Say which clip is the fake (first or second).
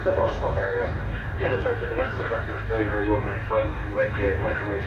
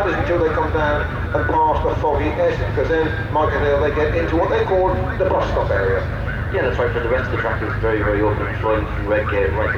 first